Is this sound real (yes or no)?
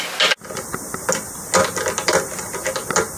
yes